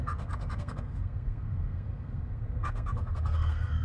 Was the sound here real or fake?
fake